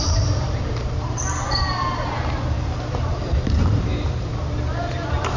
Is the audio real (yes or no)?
no